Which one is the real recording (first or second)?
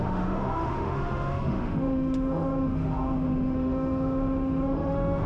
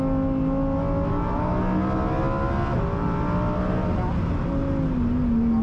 second